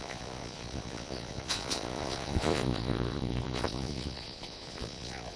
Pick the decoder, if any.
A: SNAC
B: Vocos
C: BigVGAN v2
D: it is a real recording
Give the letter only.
B